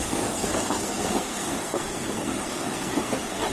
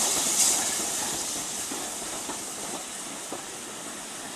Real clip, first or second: second